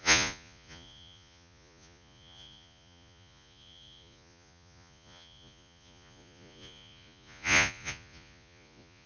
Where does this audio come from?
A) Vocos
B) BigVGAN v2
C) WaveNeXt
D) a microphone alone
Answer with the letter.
A